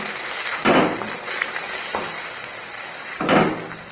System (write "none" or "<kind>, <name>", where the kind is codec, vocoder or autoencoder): vocoder, BigVGAN v2